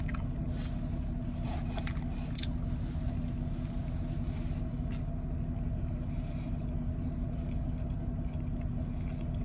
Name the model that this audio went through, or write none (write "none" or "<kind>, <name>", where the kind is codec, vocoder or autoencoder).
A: none